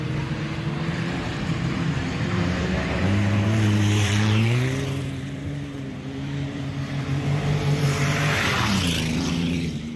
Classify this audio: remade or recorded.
remade